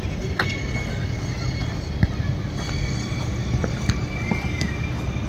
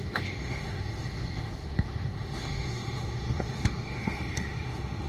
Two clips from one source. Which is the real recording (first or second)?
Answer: first